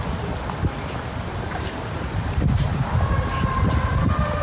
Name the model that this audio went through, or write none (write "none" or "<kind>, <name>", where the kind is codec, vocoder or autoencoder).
none